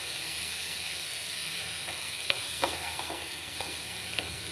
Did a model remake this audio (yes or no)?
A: yes